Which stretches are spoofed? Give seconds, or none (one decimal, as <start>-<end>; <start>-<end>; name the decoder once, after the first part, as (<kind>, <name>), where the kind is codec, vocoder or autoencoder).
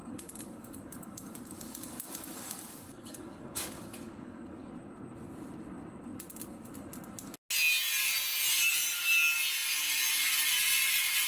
0.0-4.7 (codec, DAC)